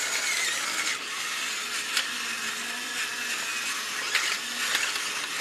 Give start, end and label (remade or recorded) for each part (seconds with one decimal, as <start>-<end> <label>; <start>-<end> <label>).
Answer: 0.0-0.9 recorded; 0.9-3.8 remade; 3.8-5.4 recorded